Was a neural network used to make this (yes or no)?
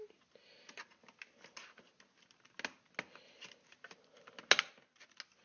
no